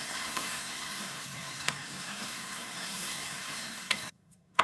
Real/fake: fake